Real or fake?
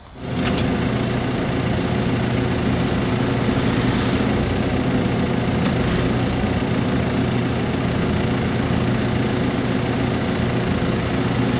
real